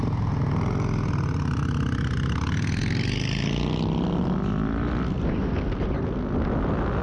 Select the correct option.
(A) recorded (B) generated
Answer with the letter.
A